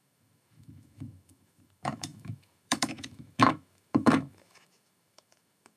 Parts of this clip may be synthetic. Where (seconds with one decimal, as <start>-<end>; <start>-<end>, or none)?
0.0-5.8